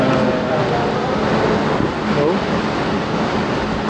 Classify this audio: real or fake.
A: real